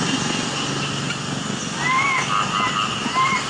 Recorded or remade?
recorded